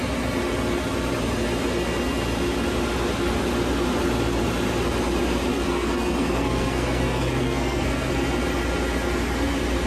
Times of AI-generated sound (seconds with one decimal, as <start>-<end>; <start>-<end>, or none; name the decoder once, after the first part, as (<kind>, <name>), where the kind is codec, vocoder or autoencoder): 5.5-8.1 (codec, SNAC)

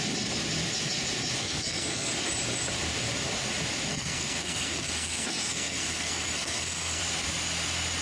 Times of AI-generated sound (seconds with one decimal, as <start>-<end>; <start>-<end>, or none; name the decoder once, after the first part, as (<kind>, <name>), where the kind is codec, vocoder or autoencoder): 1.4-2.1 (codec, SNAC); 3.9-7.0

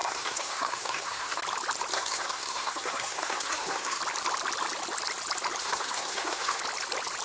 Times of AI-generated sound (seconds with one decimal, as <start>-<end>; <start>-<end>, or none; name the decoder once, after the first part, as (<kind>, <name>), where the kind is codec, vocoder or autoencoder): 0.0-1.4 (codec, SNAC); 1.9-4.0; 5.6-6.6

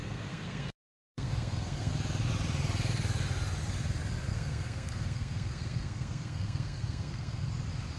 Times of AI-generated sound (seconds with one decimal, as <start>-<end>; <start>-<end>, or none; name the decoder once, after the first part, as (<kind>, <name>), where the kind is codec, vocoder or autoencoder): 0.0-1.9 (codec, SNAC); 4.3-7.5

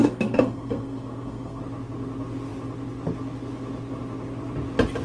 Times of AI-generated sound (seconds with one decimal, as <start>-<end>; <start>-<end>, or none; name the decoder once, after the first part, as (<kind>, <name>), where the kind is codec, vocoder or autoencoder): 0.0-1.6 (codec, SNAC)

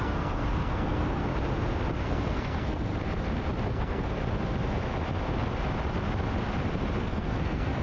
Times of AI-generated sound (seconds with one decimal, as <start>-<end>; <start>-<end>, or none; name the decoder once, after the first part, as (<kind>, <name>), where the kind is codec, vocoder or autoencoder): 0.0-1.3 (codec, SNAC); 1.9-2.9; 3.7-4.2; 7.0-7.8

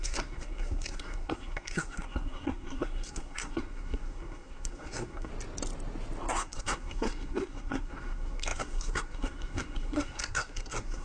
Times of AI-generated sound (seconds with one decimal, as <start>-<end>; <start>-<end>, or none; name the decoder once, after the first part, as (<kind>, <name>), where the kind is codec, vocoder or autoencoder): 0.0-5.3 (codec, SNAC); 6.3-11.0

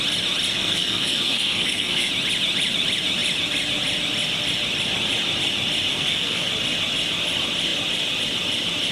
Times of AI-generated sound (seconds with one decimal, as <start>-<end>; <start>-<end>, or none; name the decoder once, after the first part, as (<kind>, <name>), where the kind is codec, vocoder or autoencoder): 0.5-2.1 (codec, SNAC); 5.9-6.5